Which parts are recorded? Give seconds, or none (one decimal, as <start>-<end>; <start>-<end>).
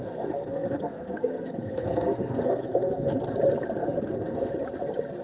3.1-3.8; 4.5-5.2